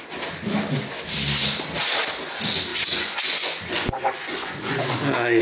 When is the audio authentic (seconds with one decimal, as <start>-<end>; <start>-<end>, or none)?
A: 0.0-2.7; 4.9-5.4